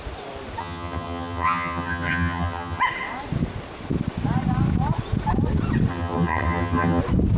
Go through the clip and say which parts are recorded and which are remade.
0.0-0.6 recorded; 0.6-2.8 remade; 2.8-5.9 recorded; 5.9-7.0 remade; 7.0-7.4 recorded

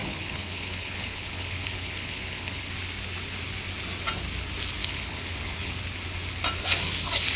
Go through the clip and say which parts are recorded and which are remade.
0.0-2.7 remade; 2.7-4.8 recorded; 4.8-5.7 remade; 5.7-7.4 recorded

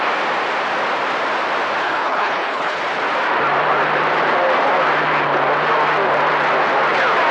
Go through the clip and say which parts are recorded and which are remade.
0.0-1.8 recorded; 1.8-2.8 remade; 2.8-7.3 recorded

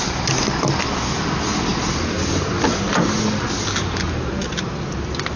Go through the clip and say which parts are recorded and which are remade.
0.0-5.4 recorded

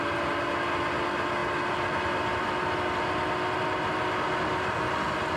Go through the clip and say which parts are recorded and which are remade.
0.0-5.4 recorded

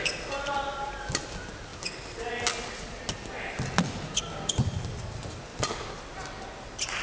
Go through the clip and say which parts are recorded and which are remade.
0.0-5.5 recorded; 5.5-6.0 remade; 6.0-7.0 recorded

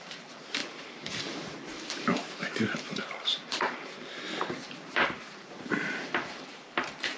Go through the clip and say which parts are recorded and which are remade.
0.0-7.2 remade

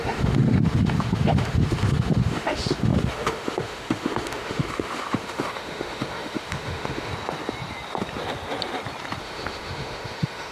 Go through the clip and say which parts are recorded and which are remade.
0.0-7.1 remade; 7.1-9.2 recorded; 9.2-10.5 remade